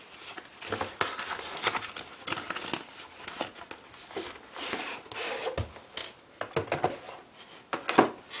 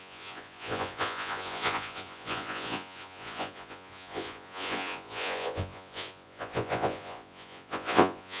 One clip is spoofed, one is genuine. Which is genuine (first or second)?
first